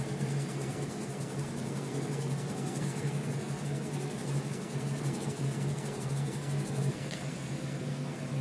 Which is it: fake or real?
fake